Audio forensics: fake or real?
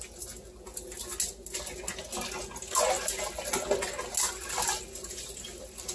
real